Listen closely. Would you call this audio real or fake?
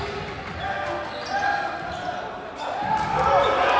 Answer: real